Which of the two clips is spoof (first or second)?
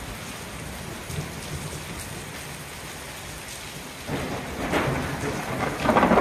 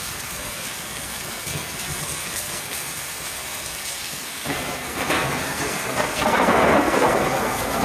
second